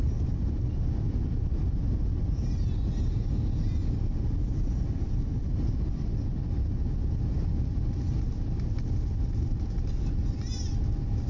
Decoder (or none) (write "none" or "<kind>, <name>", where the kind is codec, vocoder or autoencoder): none